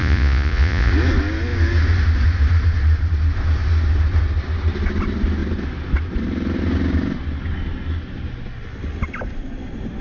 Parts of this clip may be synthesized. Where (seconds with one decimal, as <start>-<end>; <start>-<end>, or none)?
0.0-0.9